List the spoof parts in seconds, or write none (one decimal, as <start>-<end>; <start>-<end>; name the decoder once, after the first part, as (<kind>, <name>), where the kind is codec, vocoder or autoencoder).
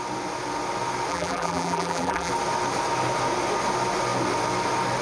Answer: 1.1-2.3 (vocoder, BigVGAN v2)